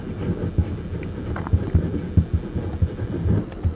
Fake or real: real